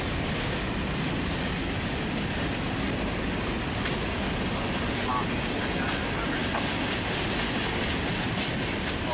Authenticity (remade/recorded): recorded